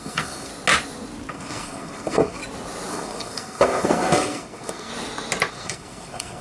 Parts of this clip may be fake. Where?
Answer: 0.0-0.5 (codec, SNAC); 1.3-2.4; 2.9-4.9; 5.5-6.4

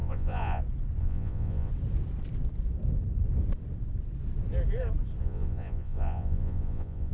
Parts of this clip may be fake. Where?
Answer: 0.0-0.6 (vocoder, Vocos); 1.0-1.7; 5.2-7.1

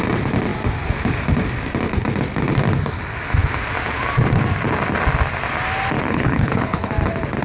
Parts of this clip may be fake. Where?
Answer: 6.1-6.9 (codec, HILCodec)

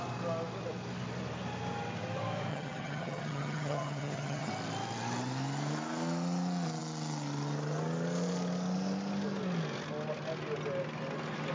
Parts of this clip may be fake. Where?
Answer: 2.5-4.5 (vocoder, HiFi-GAN)

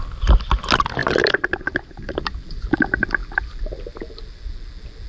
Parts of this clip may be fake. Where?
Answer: 1.0-2.4 (vocoder, BigVGAN v2)

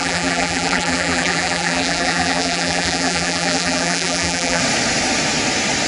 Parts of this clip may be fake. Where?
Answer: 0.0-4.6 (vocoder, BigVGAN v2)

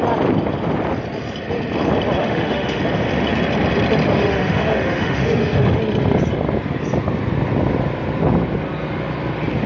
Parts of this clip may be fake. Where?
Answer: 2.2-2.8 (autoencoder, DAC-VAE); 4.0-5.8